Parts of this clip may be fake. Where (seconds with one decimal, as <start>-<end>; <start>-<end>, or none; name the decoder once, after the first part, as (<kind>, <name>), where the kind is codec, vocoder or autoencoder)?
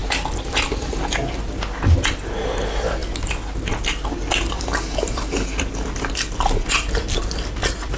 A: 0.0-0.9 (vocoder, BigVGAN v2)